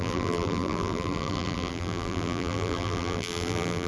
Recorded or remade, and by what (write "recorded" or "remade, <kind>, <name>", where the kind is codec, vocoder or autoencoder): remade, vocoder, BigVGAN v2